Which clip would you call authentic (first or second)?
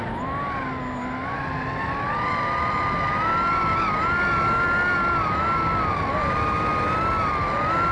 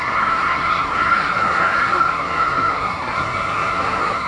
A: first